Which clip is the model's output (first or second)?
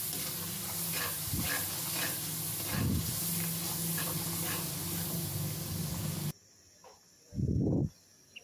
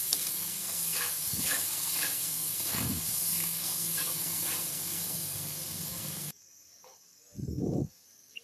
second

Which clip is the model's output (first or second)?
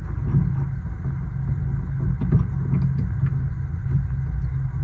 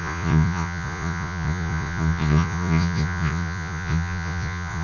second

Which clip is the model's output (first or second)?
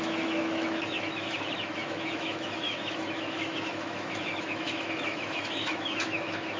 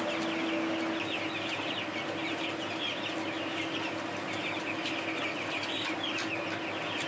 first